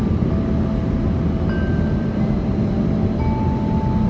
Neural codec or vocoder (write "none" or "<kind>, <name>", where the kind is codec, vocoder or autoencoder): none